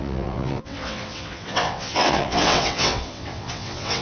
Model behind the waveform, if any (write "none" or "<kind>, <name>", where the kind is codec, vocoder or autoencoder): vocoder, WaveNeXt